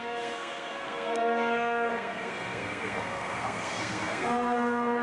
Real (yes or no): no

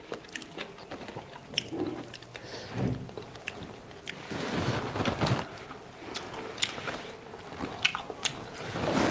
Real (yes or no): yes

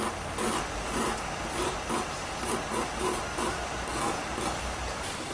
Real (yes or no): yes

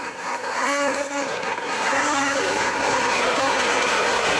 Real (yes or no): no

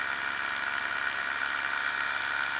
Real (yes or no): yes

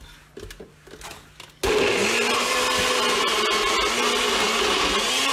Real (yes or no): yes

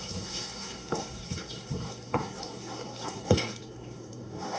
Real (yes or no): no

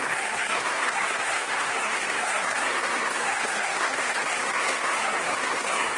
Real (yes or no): no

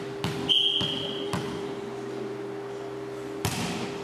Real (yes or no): yes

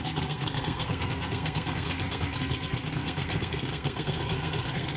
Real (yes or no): no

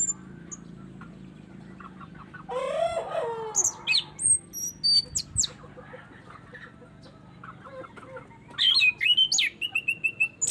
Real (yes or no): yes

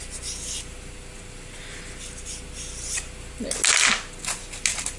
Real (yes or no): yes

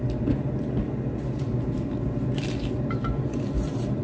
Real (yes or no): yes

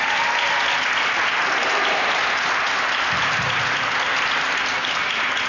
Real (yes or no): yes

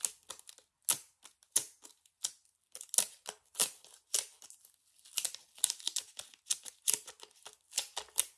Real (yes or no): yes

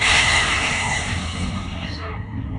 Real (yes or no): no